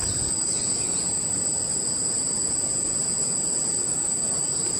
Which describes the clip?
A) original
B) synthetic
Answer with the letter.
B